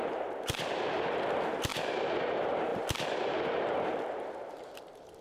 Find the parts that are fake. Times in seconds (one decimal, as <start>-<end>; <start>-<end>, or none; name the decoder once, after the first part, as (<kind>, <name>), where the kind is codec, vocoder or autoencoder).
0.0-5.2 (vocoder, BigVGAN v2)